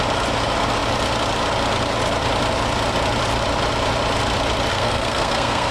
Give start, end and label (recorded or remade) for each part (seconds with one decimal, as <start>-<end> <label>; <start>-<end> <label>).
0.0-4.7 recorded; 4.7-5.7 remade